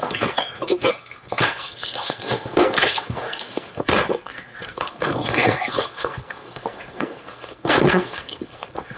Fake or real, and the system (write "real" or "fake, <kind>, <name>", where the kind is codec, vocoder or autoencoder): fake, codec, SNAC